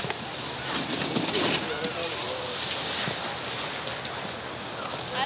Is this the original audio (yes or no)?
yes